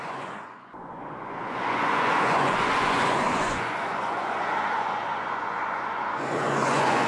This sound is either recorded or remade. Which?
remade